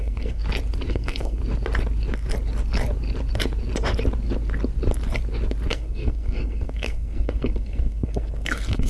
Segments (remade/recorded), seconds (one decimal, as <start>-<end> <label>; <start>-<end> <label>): 0.0-0.4 remade; 0.4-0.9 recorded; 0.9-1.4 remade; 1.4-5.7 recorded; 5.7-8.9 remade